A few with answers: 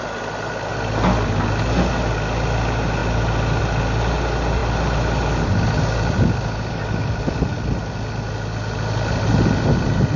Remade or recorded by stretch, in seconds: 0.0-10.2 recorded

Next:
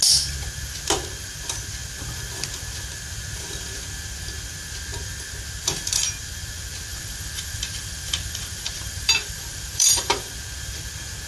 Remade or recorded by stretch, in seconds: 0.0-6.9 recorded; 6.9-10.3 remade; 10.3-11.3 recorded

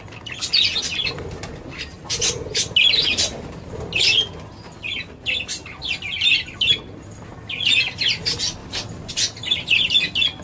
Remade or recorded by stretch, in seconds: 0.0-8.6 recorded; 8.6-9.1 remade; 9.1-10.4 recorded

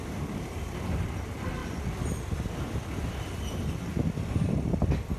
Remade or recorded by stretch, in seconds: 0.0-1.6 recorded; 1.6-3.1 remade; 3.1-5.2 recorded

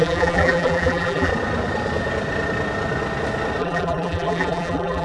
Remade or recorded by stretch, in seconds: 0.0-1.3 remade; 1.3-3.6 recorded; 3.6-5.0 remade

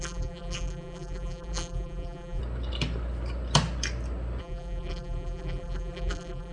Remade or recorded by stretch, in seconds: 0.0-2.4 remade; 2.4-4.4 recorded; 4.4-6.5 remade